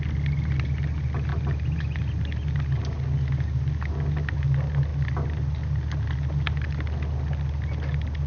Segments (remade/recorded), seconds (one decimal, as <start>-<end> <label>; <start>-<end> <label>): 0.0-8.3 recorded